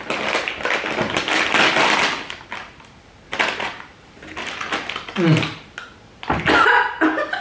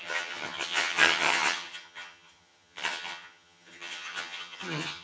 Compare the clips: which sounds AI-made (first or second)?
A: second